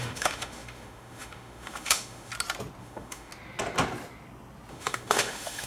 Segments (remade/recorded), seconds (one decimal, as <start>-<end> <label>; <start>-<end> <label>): 0.0-2.3 remade; 2.3-2.8 recorded; 2.8-3.3 remade; 3.3-4.7 recorded; 4.7-5.7 remade